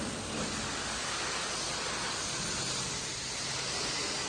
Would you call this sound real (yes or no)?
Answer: yes